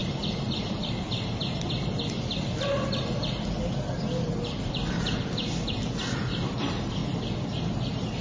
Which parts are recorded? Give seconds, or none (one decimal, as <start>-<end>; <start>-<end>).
0.0-8.2